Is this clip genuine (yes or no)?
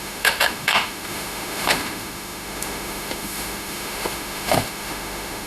no